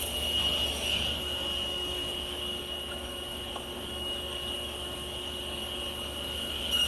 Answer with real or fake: fake